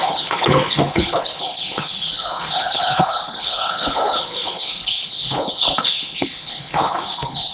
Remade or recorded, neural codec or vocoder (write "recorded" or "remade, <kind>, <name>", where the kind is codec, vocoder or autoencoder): remade, codec, HILCodec